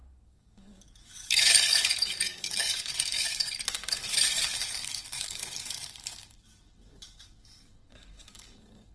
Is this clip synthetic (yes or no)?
yes